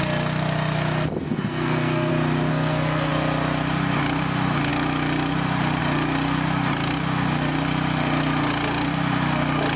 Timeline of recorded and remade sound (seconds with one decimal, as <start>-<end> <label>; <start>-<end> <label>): 0.0-1.3 recorded; 1.3-2.1 remade; 2.1-2.5 recorded; 2.5-3.1 remade; 3.1-9.8 recorded